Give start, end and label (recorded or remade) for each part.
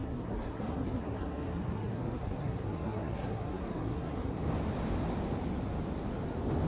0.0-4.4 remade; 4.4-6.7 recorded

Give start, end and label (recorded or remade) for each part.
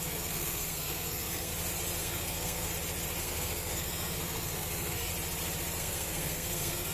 0.0-1.5 remade; 1.5-2.0 recorded; 2.0-2.7 remade; 2.7-3.2 recorded; 3.2-5.1 remade; 5.1-5.8 recorded; 5.8-6.9 remade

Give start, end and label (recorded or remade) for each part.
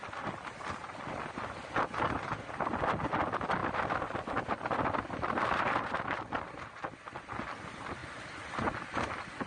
0.0-9.5 recorded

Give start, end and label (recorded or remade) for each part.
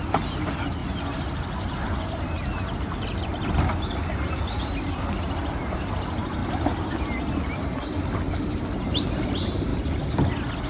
0.0-10.7 recorded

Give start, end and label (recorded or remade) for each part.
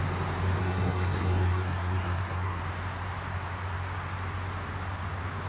0.0-0.6 recorded; 0.6-2.6 remade; 2.6-5.5 recorded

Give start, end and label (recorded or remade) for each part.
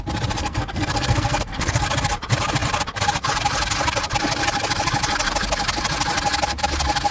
0.0-0.4 recorded; 0.4-1.8 remade; 1.8-7.1 recorded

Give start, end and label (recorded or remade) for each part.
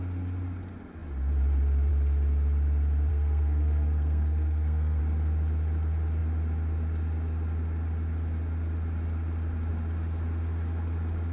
0.0-3.1 recorded; 3.1-5.0 remade; 5.0-11.3 recorded